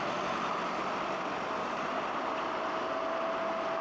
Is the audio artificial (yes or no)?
no